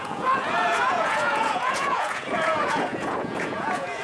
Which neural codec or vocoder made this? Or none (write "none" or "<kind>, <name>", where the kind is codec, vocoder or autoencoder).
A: vocoder, Vocos